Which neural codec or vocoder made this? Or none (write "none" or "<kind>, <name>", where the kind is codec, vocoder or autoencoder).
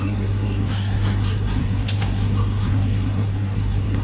codec, SNAC